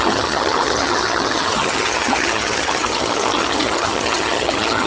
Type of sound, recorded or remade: remade